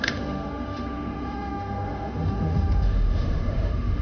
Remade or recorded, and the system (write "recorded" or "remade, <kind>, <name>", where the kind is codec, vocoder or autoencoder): remade, autoencoder, DAC-VAE